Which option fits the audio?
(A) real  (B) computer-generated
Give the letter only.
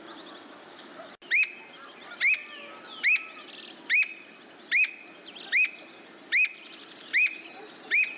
A